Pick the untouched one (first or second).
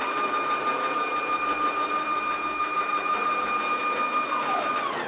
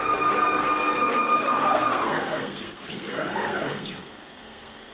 first